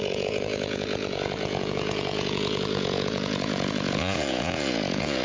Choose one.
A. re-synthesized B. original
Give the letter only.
A